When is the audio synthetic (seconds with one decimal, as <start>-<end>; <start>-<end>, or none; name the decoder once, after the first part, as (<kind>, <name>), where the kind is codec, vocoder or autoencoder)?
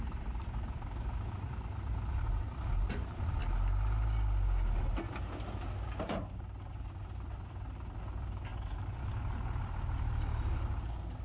0.0-3.4 (vocoder, BigVGAN v2); 8.0-8.5; 9.6-11.2